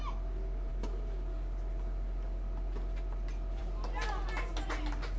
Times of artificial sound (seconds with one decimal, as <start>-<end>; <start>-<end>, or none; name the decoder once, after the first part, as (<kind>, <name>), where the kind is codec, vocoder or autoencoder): none